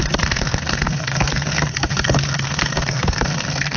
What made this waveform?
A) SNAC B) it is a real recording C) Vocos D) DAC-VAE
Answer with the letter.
A